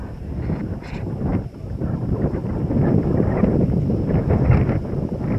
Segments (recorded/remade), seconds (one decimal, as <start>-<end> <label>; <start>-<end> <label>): 0.0-1.3 recorded; 1.3-2.4 remade; 2.4-5.4 recorded